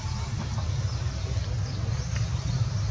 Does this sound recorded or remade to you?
recorded